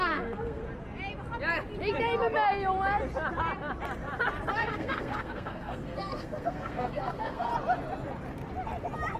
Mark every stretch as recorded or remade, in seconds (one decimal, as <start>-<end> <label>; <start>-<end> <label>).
0.0-0.6 remade; 0.6-4.5 recorded; 4.5-7.5 remade; 7.5-9.2 recorded